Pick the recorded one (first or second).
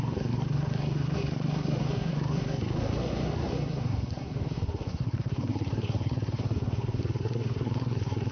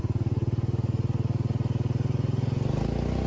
second